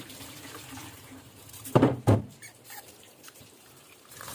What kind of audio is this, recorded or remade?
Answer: remade